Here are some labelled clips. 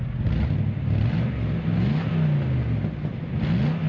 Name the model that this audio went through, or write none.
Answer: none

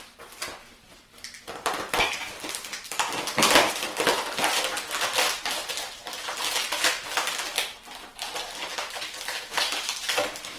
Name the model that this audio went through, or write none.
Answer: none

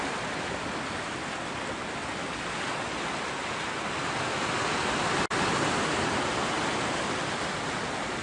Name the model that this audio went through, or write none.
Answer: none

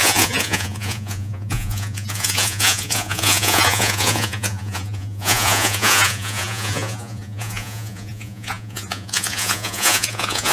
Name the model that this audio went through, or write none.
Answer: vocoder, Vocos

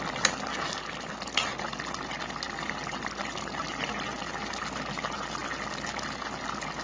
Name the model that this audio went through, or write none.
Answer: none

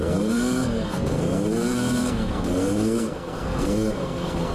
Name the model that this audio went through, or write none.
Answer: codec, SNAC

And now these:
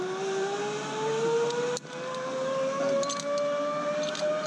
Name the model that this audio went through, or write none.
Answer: none